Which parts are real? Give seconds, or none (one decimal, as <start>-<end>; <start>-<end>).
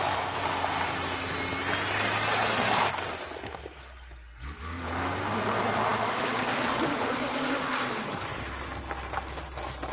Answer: 0.0-9.9